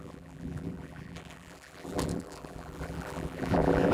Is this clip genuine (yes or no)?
no